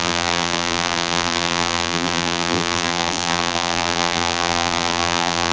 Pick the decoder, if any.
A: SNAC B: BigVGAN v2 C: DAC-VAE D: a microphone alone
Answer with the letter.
B